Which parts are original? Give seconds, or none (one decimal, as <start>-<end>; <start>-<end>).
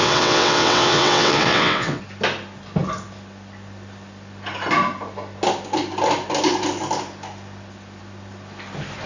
2.0-9.1